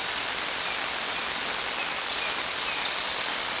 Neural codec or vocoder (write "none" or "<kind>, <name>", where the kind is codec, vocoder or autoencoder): none